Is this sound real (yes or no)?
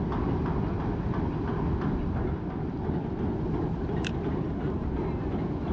yes